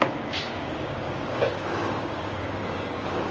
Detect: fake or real fake